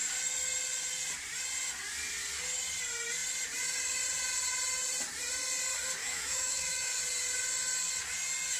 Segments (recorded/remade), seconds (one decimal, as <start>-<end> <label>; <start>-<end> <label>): 0.0-6.0 recorded; 6.0-7.0 remade; 7.0-8.6 recorded